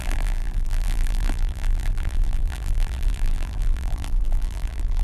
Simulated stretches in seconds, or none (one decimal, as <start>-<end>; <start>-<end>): 0.0-5.0